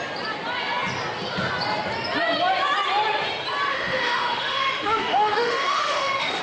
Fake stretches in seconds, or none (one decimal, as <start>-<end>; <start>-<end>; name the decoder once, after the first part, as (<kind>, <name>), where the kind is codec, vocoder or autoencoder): 3.7-6.4 (autoencoder, DAC-VAE)